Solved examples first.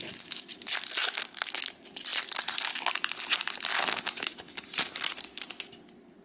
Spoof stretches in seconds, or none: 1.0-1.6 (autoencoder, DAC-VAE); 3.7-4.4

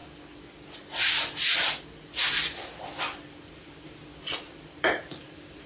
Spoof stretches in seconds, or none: 3.4-5.7 (vocoder, BigVGAN v2)

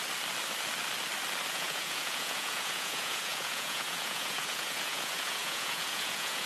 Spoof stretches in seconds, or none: 1.5-6.5 (vocoder, Vocos)

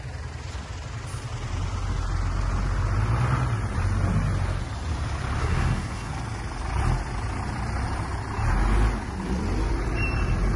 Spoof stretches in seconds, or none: 5.4-6.1 (codec, SNAC)